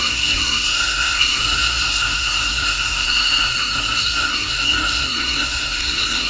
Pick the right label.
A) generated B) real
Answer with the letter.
A